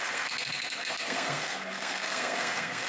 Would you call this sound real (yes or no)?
no